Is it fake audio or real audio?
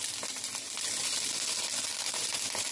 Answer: real